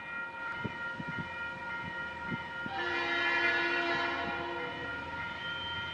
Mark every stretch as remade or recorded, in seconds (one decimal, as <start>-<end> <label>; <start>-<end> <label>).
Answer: 0.0-0.4 recorded; 0.4-3.9 remade; 3.9-4.9 recorded; 4.9-5.5 remade; 5.5-5.9 recorded